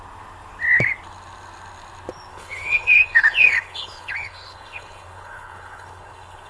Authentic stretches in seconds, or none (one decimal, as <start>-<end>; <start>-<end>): 0.0-2.3